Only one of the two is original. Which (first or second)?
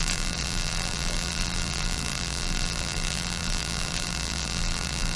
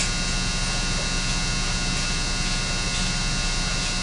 second